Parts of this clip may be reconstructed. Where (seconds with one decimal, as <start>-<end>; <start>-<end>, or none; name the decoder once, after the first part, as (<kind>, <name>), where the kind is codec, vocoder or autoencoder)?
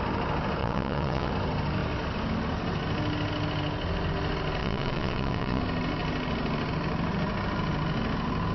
0.6-1.3 (vocoder, WaveNeXt); 4.6-5.6